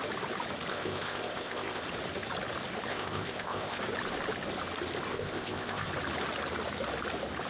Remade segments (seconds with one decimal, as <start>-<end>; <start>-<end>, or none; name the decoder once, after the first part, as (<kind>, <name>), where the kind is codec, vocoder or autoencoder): 0.7-1.8 (codec, ZipCodec); 2.9-3.8; 5.1-5.9